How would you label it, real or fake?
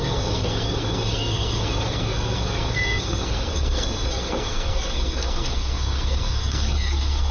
fake